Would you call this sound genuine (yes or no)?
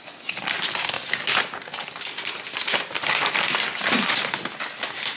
yes